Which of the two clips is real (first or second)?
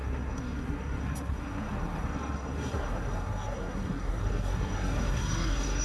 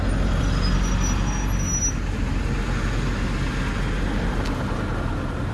second